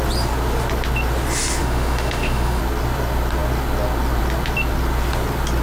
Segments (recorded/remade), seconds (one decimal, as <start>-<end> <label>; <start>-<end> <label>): 0.0-1.6 recorded; 1.6-2.6 remade; 2.6-5.6 recorded